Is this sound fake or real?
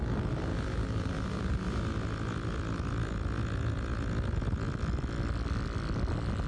real